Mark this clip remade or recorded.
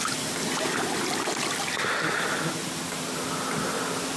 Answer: recorded